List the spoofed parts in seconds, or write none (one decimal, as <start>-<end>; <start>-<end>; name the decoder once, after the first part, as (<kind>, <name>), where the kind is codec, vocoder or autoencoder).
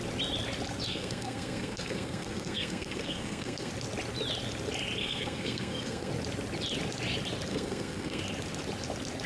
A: 0.9-3.7 (codec, SNAC); 5.0-6.1; 7.5-8.2